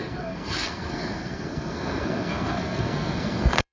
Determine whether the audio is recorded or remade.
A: remade